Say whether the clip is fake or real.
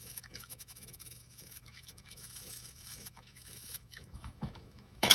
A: fake